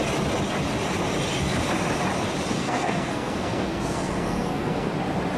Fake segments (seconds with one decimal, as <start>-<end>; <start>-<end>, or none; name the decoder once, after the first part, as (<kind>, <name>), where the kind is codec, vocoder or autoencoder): 2.5-4.9 (codec, SNAC)